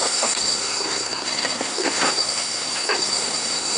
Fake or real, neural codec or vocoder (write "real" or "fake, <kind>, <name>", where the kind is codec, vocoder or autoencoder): fake, codec, SNAC